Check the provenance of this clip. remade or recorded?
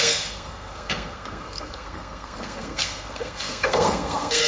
remade